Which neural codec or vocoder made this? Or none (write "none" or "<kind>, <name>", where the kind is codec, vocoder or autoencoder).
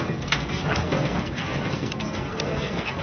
codec, SNAC